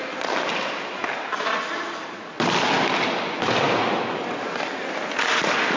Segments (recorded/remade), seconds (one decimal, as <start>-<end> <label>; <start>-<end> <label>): 0.0-5.8 recorded